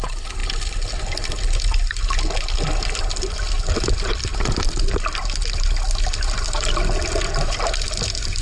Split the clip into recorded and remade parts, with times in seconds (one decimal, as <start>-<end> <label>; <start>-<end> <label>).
0.0-8.4 recorded